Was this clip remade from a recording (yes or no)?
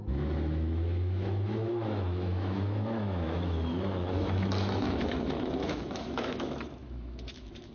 yes